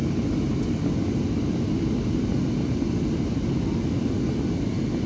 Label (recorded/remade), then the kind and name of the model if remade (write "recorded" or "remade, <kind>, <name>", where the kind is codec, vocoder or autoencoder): recorded